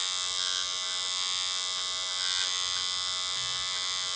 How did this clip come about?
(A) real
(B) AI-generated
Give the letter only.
A